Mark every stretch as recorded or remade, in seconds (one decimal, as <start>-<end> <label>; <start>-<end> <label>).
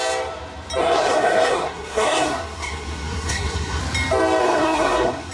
0.0-0.8 recorded; 0.8-3.8 remade; 3.8-4.4 recorded; 4.4-5.3 remade